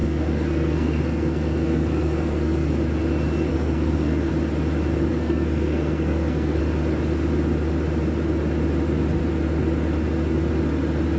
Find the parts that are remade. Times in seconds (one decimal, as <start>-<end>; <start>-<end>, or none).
0.0-2.8; 3.5-4.3; 5.1-6.6